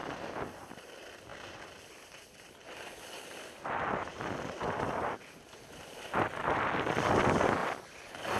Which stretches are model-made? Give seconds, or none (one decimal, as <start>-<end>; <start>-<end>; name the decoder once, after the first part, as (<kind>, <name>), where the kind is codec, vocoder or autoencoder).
none